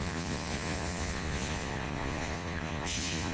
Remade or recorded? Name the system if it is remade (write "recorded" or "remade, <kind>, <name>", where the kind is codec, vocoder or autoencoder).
remade, vocoder, Vocos